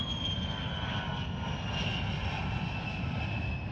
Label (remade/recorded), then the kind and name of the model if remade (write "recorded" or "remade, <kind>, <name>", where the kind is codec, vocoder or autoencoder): recorded